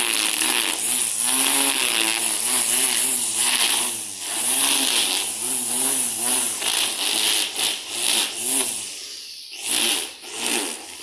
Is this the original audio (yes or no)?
yes